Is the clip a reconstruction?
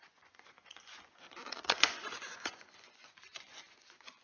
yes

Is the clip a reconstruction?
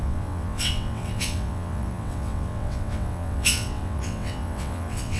yes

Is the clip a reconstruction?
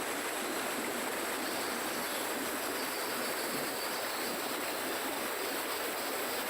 no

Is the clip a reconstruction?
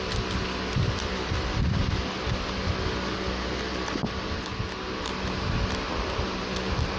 yes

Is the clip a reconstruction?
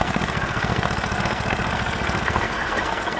yes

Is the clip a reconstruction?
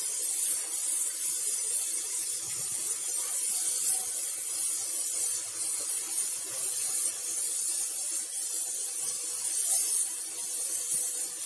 no